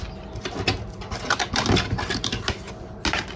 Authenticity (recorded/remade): recorded